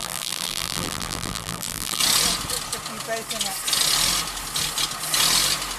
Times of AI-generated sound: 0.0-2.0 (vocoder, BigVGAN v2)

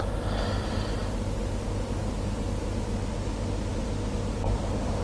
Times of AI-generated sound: none